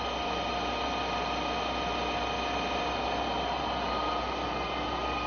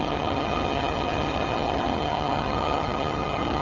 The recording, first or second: first